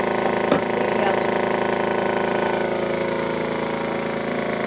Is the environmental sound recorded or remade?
recorded